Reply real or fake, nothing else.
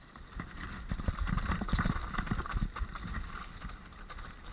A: real